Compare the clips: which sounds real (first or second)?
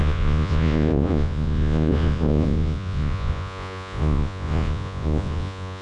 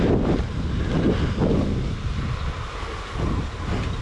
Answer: second